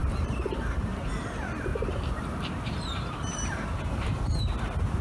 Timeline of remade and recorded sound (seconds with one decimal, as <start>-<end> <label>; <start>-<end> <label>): 0.0-0.9 remade; 0.9-1.7 recorded; 1.7-4.2 remade; 4.2-5.0 recorded